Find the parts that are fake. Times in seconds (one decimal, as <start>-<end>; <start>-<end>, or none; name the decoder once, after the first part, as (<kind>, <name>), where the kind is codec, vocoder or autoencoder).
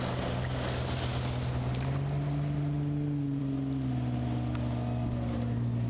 none